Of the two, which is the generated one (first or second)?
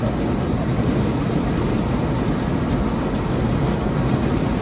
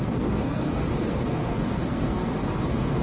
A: second